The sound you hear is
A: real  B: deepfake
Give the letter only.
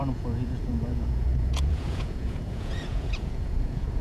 B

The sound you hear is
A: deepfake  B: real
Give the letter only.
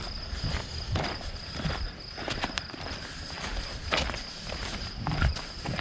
B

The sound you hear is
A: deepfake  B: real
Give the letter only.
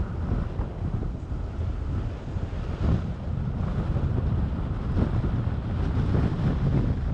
B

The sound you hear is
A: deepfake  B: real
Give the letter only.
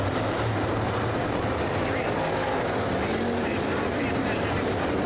A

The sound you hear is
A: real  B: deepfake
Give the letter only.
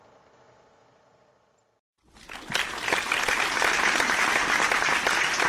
A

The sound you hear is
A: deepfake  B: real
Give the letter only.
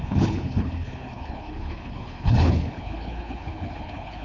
A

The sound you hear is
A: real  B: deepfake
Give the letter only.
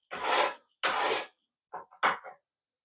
A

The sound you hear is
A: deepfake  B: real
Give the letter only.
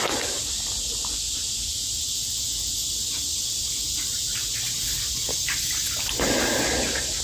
B